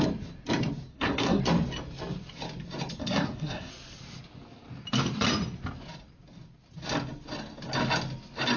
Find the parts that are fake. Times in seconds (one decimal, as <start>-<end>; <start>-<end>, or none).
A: 0.9-1.4; 3.0-3.7